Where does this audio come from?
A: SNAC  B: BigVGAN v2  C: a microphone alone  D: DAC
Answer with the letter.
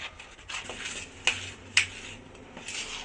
C